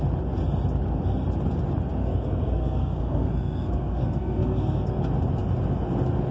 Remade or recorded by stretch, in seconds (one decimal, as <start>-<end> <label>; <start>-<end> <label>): 0.0-2.0 recorded; 2.0-5.0 remade; 5.0-6.3 recorded